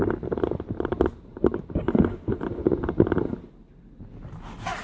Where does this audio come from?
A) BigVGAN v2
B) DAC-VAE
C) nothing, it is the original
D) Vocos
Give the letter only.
C